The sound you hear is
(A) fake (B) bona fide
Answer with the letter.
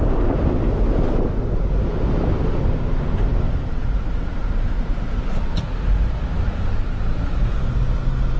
B